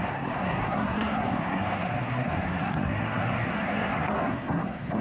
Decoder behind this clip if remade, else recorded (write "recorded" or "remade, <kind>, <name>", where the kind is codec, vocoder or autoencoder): remade, codec, SNAC